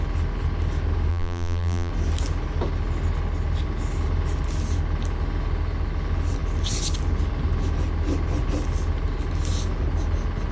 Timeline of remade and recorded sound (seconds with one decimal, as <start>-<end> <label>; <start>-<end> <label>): 0.0-1.1 recorded; 1.1-1.9 remade; 1.9-10.5 recorded